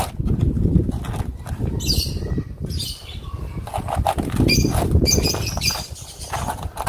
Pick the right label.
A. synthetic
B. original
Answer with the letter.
B